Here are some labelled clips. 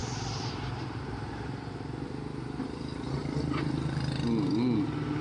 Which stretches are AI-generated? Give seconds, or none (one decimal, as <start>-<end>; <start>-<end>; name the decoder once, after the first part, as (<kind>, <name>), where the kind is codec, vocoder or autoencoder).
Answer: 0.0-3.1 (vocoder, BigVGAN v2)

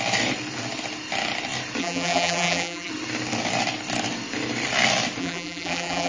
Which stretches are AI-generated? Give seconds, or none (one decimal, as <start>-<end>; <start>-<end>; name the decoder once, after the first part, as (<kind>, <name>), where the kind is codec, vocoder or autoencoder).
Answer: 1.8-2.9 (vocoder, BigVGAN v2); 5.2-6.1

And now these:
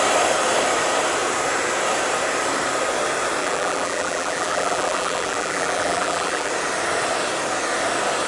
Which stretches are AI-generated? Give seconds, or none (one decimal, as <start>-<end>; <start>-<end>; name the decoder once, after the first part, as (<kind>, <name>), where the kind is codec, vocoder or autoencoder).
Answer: 3.4-6.5 (vocoder, BigVGAN v2)

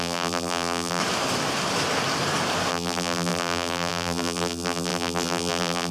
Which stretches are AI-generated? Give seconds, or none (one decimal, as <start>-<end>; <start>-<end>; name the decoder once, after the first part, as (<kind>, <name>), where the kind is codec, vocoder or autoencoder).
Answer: 0.0-1.0 (vocoder, BigVGAN v2); 2.7-5.9